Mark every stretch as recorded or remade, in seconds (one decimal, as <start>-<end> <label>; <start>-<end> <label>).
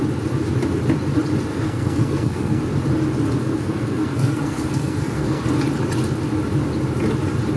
0.0-1.5 recorded; 1.5-2.6 remade; 2.6-3.4 recorded; 3.4-5.4 remade; 5.4-7.6 recorded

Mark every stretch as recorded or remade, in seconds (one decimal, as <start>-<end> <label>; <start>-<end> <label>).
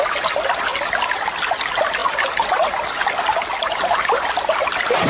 0.0-5.1 recorded